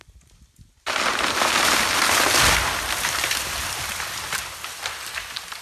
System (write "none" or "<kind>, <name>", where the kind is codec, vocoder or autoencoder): none